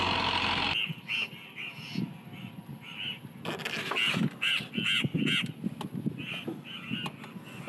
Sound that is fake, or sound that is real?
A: real